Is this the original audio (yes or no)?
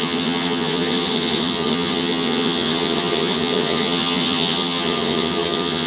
no